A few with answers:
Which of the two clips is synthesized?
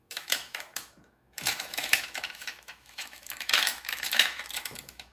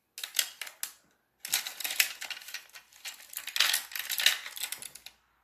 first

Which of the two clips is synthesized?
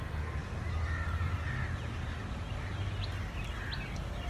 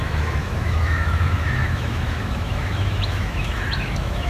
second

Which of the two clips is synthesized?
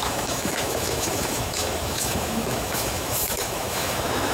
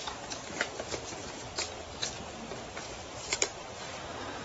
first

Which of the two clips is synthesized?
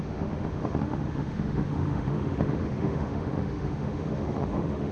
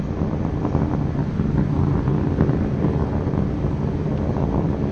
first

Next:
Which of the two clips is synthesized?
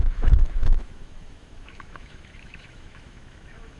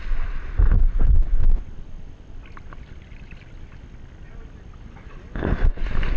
first